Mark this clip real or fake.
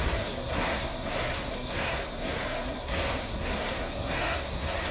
fake